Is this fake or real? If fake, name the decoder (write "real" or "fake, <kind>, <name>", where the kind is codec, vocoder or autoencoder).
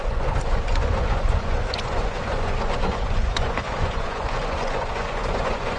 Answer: fake, vocoder, Vocos